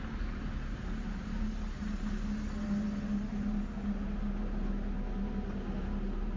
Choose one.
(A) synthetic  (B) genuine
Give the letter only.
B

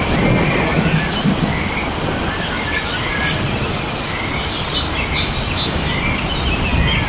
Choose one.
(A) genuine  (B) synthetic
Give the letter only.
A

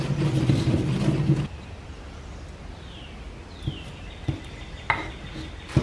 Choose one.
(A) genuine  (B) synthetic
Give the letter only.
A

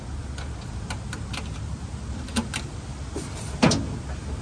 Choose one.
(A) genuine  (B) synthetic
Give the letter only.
A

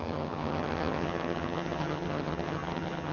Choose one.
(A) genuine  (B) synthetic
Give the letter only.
B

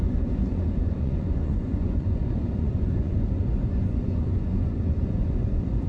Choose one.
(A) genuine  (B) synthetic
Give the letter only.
B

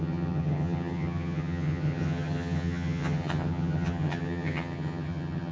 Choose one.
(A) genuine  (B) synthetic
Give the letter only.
B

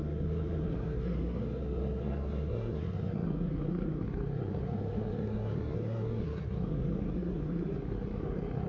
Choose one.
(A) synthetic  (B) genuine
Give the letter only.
A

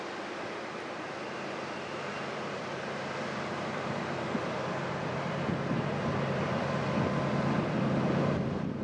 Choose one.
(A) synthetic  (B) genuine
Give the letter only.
A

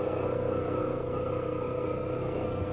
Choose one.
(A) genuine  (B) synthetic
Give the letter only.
B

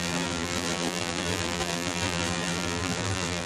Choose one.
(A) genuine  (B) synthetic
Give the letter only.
B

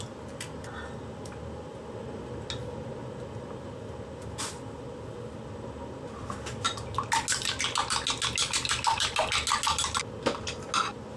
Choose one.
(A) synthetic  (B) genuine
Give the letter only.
B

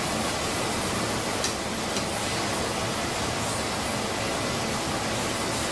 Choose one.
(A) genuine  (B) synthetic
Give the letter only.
A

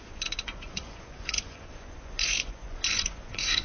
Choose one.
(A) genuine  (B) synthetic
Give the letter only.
B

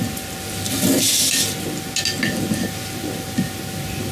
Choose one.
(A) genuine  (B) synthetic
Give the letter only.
A